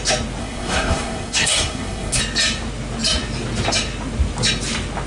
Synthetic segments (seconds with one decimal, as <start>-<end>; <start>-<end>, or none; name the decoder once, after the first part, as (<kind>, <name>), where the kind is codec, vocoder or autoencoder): 0.4-2.2 (codec, SNAC)